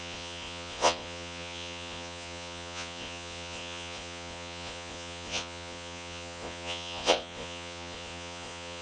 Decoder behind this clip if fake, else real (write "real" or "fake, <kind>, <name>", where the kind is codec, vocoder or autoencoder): fake, vocoder, Vocos